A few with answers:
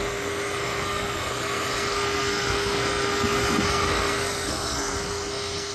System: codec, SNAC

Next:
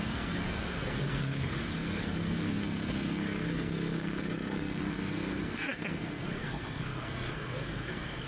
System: codec, SNAC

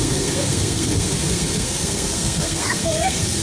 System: codec, SNAC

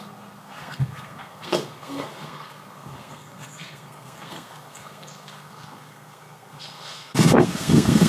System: codec, SNAC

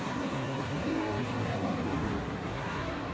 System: codec, SNAC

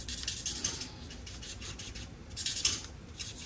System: none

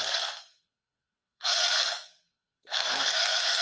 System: codec, SNAC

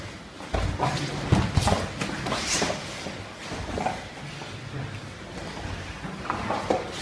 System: none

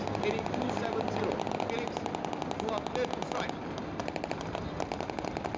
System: none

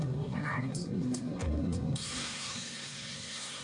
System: codec, SNAC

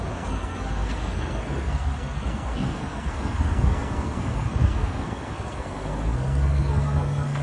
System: codec, SNAC